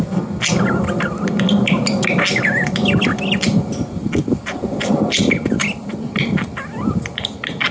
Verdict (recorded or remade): recorded